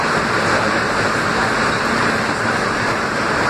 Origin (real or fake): fake